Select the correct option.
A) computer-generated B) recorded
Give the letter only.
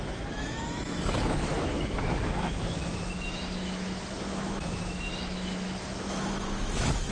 A